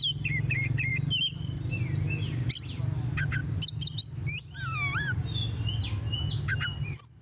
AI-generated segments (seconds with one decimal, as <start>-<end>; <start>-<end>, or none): none